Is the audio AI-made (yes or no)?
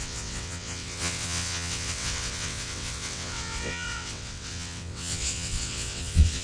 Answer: yes